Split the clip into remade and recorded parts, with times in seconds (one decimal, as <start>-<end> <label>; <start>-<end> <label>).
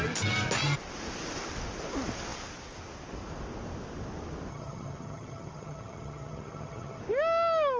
0.0-4.5 recorded; 4.5-7.0 remade; 7.0-7.8 recorded